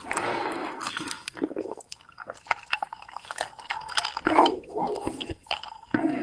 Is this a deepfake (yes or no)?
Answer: yes